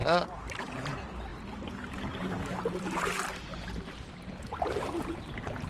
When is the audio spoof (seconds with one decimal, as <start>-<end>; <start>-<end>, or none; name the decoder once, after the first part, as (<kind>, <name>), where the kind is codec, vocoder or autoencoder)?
0.0-1.3 (vocoder, BigVGAN v2); 1.9-5.7